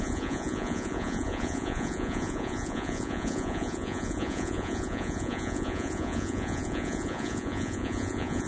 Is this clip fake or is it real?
fake